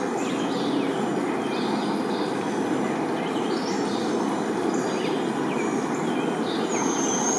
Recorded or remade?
recorded